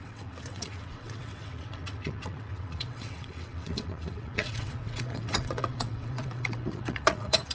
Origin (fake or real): fake